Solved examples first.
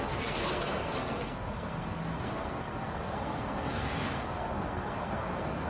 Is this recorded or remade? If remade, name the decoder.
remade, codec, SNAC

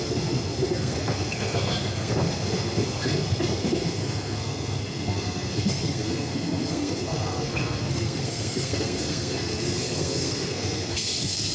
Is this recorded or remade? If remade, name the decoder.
remade, codec, SNAC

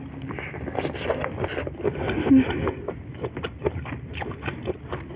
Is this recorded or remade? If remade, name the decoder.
recorded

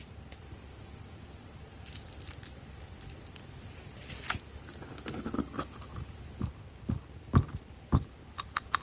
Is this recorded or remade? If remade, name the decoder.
recorded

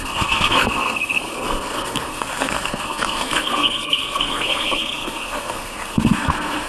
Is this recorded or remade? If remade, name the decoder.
remade, codec, SNAC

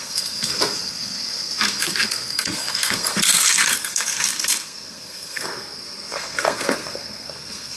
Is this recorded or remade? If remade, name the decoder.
remade, codec, SNAC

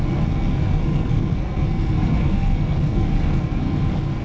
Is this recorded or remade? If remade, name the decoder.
remade, codec, SNAC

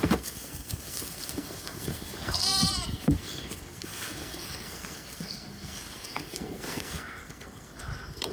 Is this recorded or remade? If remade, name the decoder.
remade, codec, SNAC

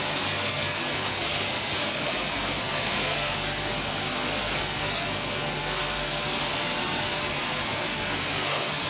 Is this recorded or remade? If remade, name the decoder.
remade, codec, SNAC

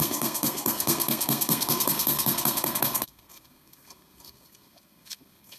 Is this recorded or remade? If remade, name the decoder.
remade, codec, SNAC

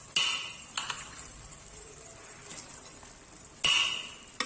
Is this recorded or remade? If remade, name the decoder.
recorded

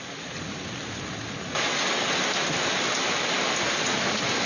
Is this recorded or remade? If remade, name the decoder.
recorded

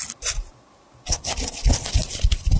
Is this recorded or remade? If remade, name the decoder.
recorded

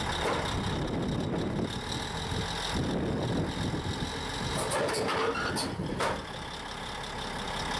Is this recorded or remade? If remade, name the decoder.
recorded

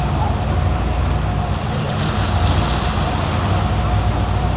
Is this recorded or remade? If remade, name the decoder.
recorded